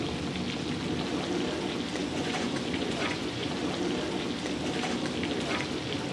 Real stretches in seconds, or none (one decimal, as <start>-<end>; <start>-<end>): 0.0-2.0; 3.5-6.1

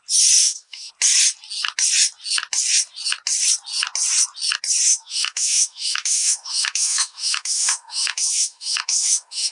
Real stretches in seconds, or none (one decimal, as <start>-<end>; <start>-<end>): 0.0-0.4; 0.9-4.9